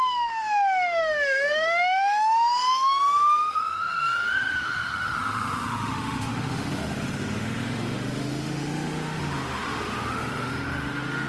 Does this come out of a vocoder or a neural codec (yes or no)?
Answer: yes